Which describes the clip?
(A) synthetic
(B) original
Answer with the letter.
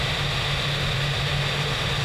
B